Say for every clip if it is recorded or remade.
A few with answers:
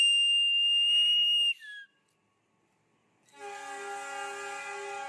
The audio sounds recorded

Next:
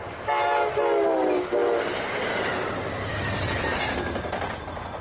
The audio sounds recorded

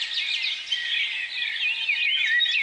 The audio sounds recorded